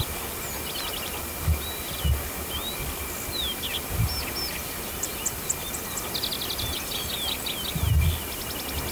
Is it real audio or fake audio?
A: real